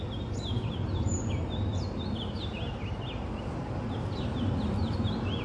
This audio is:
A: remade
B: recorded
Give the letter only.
B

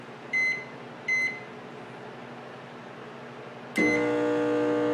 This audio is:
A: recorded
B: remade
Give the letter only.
A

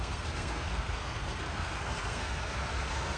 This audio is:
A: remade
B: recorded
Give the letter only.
A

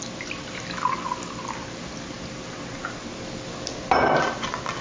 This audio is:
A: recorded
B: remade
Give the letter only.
A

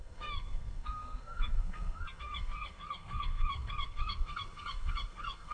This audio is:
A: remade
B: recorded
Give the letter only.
A